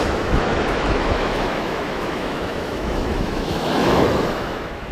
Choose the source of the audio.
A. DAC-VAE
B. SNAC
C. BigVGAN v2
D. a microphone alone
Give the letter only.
A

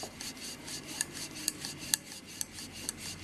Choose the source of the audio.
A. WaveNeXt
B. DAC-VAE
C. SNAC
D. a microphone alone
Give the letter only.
D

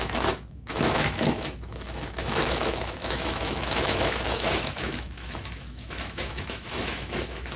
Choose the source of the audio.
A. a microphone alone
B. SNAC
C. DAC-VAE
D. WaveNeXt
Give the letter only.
C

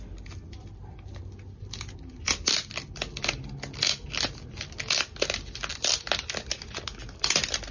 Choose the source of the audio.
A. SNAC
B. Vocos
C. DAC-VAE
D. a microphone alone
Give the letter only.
D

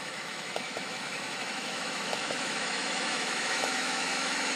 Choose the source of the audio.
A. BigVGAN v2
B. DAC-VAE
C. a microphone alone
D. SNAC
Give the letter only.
B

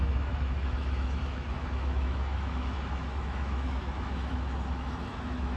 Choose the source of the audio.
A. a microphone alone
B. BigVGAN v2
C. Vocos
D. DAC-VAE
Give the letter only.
D